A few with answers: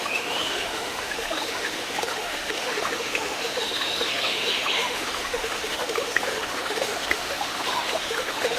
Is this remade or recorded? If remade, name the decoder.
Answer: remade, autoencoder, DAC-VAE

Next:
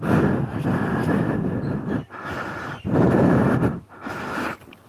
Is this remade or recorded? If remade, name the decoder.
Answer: recorded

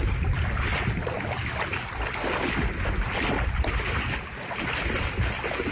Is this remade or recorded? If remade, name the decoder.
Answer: recorded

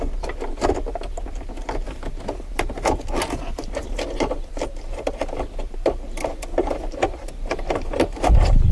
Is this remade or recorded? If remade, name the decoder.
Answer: recorded